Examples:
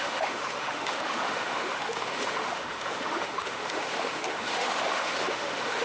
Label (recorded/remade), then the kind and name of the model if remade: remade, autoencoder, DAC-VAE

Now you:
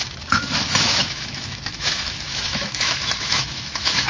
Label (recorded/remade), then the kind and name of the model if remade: remade, autoencoder, DAC-VAE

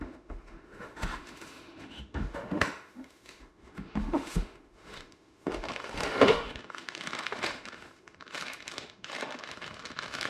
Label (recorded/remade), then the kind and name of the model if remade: remade, autoencoder, DAC-VAE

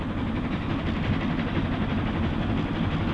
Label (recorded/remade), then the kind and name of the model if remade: recorded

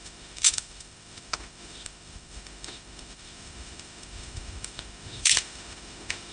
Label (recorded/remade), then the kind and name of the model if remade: remade, autoencoder, DAC-VAE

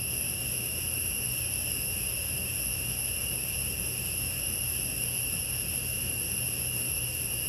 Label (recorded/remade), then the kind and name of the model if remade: remade, autoencoder, DAC-VAE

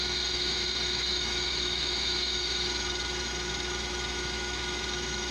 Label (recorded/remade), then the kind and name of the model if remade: remade, autoencoder, DAC-VAE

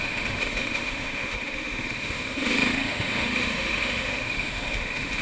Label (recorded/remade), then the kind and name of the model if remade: remade, autoencoder, DAC-VAE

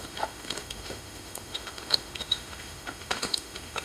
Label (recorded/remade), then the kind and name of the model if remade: remade, autoencoder, DAC-VAE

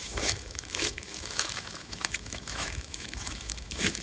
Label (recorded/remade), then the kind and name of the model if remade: remade, autoencoder, DAC-VAE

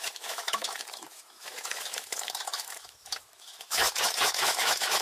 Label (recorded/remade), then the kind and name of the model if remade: remade, autoencoder, DAC-VAE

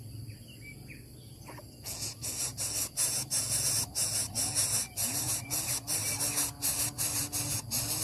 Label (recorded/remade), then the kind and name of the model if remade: recorded